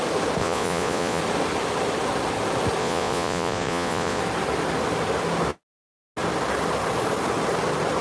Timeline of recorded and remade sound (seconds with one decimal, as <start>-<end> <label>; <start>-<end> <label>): 0.0-0.4 recorded; 0.4-1.2 remade; 1.2-2.8 recorded; 2.8-4.2 remade; 4.2-8.0 recorded